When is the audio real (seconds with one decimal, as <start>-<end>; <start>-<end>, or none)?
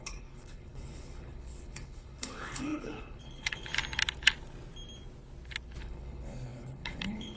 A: 3.7-5.8